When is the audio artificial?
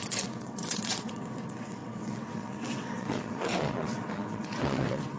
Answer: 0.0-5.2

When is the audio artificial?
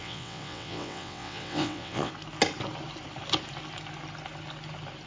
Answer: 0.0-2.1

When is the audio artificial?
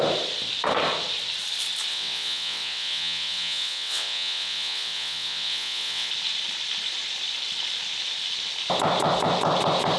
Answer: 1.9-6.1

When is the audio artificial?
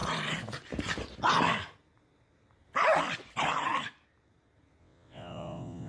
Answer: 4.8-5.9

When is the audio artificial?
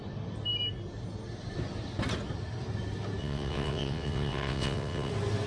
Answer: 3.2-5.1